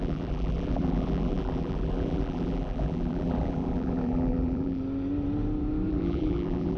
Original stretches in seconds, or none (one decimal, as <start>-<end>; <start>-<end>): 4.8-5.9